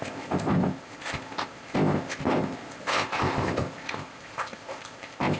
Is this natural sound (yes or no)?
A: no